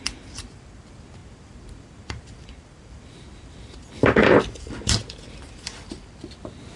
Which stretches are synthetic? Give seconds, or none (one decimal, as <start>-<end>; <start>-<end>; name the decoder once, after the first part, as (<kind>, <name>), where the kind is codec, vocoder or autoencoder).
0.0-6.8 (vocoder, BigVGAN v2)